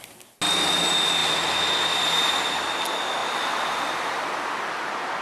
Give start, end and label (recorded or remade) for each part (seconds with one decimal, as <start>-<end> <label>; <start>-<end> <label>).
0.0-5.2 recorded